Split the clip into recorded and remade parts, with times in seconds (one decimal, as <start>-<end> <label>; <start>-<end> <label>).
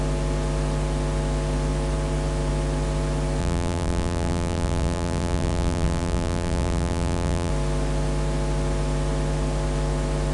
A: 0.0-3.4 recorded; 3.4-7.5 remade; 7.5-10.3 recorded